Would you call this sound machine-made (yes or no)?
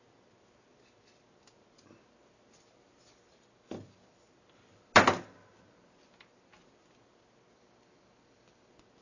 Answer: no